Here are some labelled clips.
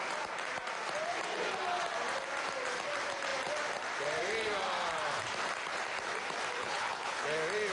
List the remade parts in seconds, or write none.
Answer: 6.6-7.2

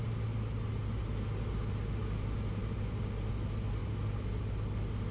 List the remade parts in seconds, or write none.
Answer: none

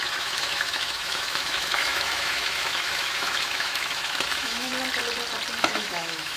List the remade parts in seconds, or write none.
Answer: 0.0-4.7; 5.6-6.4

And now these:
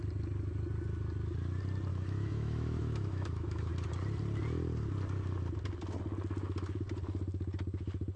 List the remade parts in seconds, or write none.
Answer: 1.9-3.7

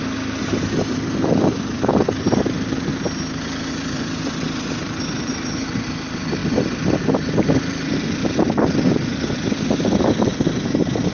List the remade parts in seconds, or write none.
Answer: 0.0-2.9; 3.7-6.4; 7.0-8.2; 8.9-10.3